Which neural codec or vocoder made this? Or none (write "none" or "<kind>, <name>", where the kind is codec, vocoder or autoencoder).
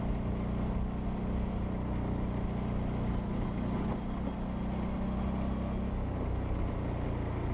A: none